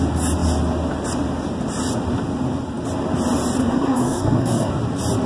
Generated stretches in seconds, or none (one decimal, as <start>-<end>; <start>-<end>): 3.6-4.7